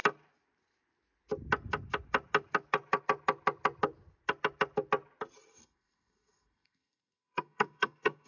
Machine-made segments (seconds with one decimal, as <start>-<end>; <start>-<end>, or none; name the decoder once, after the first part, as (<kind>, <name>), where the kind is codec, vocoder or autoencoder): 5.5-8.3 (codec, SNAC)